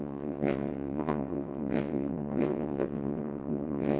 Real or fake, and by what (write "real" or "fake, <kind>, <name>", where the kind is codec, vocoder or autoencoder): fake, vocoder, WaveNeXt